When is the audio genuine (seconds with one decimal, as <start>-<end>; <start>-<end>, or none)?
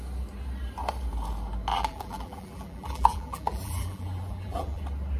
0.0-1.7; 4.8-5.2